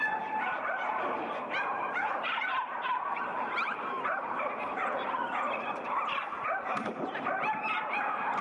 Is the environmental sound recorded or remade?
remade